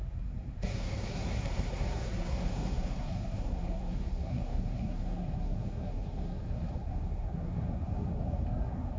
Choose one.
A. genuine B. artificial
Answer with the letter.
B